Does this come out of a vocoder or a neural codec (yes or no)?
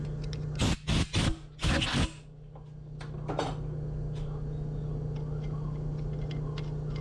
no